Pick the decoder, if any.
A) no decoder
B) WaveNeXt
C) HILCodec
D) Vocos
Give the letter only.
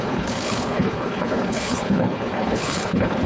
C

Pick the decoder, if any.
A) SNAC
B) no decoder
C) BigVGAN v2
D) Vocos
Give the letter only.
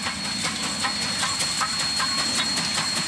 B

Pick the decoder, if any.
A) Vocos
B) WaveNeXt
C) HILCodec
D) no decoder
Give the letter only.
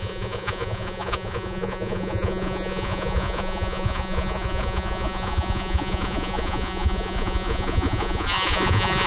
A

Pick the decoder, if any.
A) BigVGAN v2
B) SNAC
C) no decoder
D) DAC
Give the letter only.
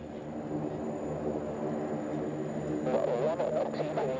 C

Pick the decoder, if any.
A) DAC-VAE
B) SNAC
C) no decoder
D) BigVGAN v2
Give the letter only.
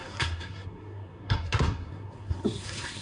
B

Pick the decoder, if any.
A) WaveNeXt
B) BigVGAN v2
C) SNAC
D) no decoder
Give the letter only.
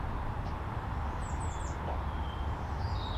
B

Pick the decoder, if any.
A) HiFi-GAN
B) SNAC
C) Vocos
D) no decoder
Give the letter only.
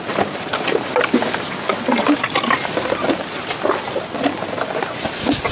D